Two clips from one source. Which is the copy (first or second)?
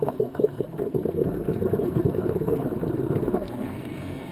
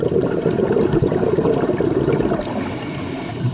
first